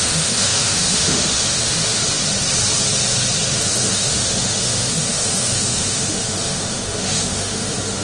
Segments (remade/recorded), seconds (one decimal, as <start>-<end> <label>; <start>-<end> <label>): 0.0-2.0 remade; 2.0-3.6 recorded; 3.6-8.0 remade